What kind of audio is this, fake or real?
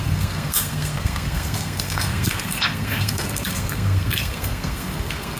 fake